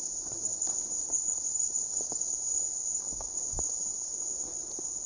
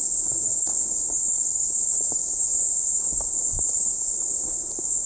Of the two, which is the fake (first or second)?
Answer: second